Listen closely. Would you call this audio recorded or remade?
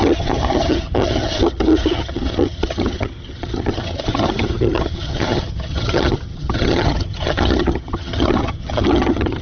remade